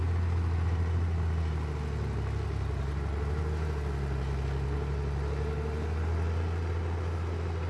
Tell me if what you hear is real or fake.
real